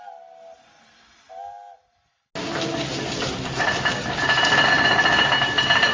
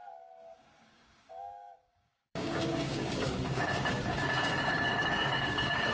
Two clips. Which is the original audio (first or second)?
first